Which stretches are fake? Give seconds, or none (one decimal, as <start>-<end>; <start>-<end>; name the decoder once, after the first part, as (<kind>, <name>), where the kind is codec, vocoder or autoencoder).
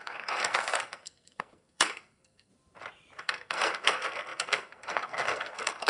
0.0-2.5 (codec, SNAC); 3.2-5.9